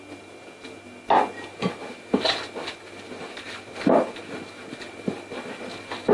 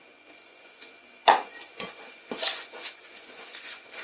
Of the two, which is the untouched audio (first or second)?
first